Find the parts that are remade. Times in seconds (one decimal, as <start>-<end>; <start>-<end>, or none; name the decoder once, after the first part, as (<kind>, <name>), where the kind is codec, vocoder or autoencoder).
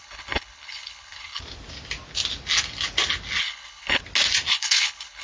0.0-1.4 (codec, HILCodec); 3.4-4.0; 4.5-5.2